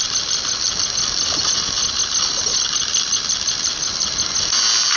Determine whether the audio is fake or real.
real